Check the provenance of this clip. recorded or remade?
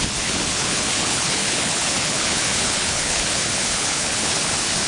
remade